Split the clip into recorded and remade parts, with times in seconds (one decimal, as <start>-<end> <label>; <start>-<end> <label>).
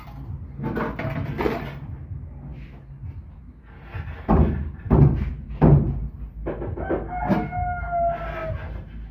0.0-9.1 recorded